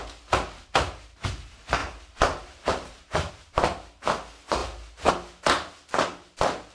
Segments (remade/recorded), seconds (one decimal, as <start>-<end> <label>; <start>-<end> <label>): 0.0-1.8 recorded; 1.8-3.3 remade; 3.3-6.7 recorded

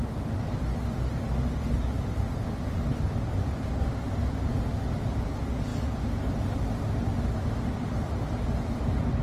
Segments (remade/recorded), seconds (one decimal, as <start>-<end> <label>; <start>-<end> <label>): 0.0-9.2 recorded